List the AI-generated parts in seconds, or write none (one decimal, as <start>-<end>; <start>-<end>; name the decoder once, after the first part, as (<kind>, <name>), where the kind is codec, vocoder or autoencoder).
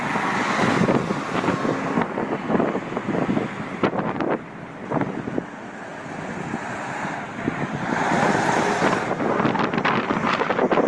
none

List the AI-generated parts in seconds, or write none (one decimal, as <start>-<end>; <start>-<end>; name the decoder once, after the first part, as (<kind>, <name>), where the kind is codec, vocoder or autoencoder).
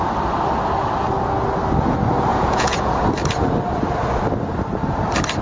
2.3-2.9 (vocoder, Vocos)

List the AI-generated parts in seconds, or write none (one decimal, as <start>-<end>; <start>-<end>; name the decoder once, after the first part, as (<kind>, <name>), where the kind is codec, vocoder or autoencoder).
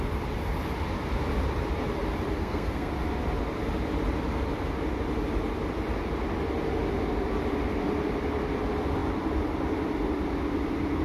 2.4-2.9 (codec, SNAC)